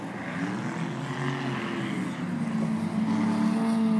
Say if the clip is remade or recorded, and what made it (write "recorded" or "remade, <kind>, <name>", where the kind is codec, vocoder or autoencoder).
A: recorded